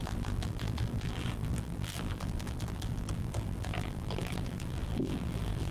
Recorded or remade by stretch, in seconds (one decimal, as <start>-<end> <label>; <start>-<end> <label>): 0.0-5.7 remade